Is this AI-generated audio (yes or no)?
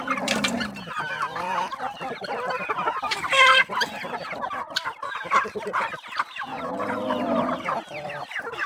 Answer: yes